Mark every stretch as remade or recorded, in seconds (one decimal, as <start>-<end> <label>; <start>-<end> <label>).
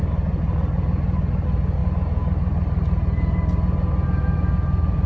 0.0-5.1 recorded